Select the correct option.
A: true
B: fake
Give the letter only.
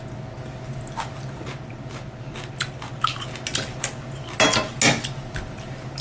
A